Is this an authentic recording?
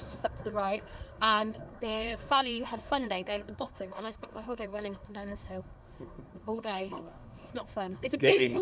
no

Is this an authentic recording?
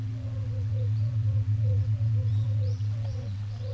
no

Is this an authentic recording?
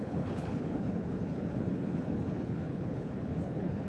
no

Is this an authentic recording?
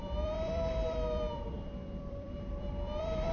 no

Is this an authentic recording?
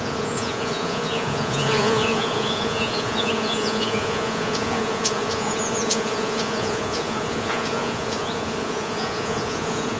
no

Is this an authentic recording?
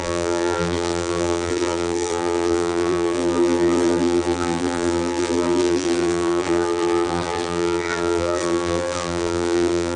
no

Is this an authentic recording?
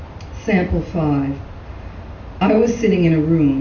yes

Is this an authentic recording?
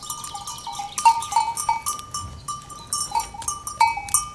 yes